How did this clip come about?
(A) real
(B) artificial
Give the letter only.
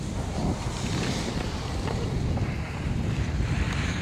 B